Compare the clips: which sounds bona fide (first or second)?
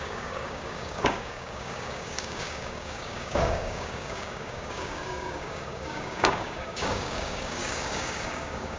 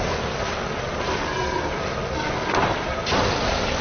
second